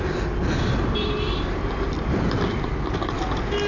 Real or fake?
real